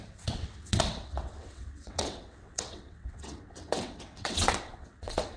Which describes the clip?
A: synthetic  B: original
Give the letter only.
A